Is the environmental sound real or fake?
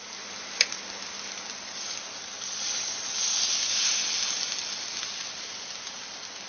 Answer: real